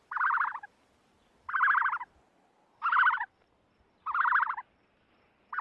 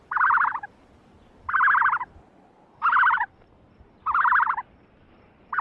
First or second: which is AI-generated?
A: second